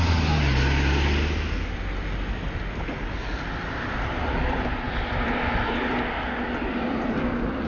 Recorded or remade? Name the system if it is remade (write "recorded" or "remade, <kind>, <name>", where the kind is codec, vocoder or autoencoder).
recorded